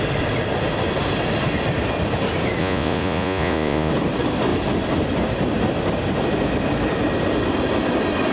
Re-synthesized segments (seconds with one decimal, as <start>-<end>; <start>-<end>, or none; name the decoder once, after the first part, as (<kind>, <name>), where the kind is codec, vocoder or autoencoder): 2.6-3.9 (vocoder, Vocos)